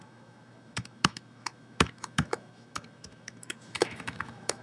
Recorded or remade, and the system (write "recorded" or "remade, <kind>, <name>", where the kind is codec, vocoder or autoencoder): remade, autoencoder, DAC-VAE